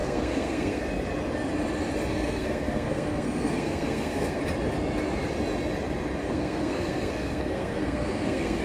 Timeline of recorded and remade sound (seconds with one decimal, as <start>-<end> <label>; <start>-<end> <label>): 0.0-0.8 remade; 0.8-2.1 recorded; 2.1-4.4 remade; 4.4-6.2 recorded; 6.2-8.6 remade